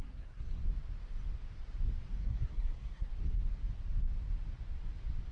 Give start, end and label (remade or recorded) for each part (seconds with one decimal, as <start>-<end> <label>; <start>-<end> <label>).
0.0-0.6 remade; 0.6-2.2 recorded; 2.2-3.1 remade; 3.1-5.3 recorded